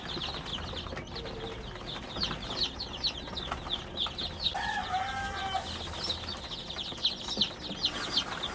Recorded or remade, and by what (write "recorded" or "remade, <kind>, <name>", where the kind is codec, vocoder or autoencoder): recorded